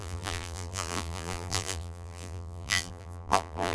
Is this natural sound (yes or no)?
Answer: no